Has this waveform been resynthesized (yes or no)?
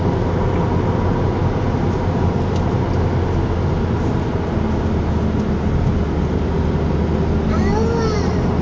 no